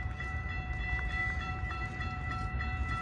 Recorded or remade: remade